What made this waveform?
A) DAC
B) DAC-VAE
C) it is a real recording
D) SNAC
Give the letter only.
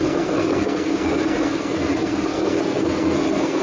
D